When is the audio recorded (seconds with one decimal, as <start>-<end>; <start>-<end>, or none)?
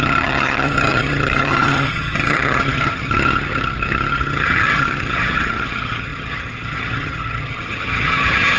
none